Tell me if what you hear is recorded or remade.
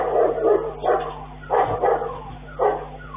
recorded